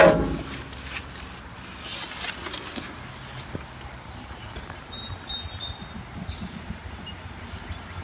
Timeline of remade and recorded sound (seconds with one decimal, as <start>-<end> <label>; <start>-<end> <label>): 0.0-8.0 recorded